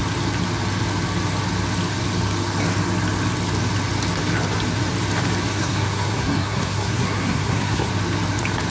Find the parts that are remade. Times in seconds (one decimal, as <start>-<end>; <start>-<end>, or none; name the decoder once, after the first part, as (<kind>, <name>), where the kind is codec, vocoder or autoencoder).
5.5-7.9 (codec, SNAC)